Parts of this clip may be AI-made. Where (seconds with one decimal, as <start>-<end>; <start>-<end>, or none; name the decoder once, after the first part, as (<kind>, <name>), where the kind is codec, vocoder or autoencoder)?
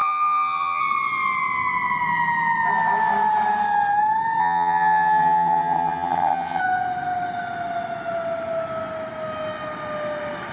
0.0-0.8 (vocoder, HiFi-GAN); 4.4-6.6